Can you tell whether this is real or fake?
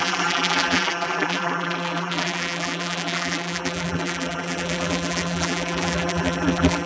fake